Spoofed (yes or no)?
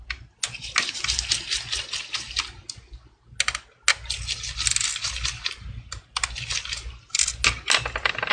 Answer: no